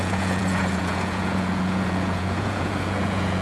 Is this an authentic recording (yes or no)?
no